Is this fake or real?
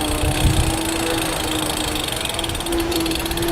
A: real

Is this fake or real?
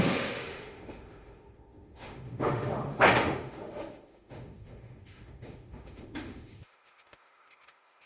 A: fake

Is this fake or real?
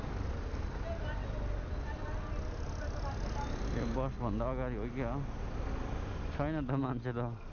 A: real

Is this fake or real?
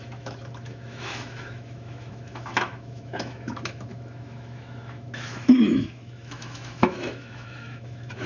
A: fake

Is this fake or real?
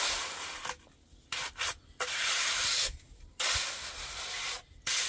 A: real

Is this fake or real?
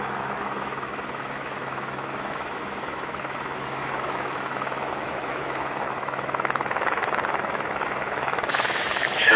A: fake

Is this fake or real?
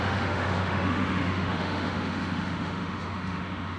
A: fake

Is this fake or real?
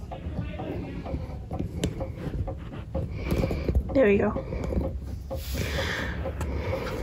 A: real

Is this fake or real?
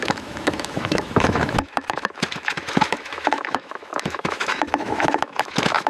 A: fake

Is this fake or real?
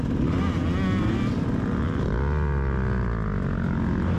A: real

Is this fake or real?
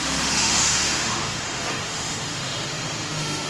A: fake